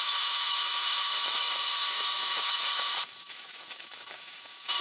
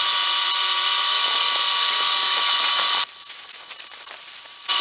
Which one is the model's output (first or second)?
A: first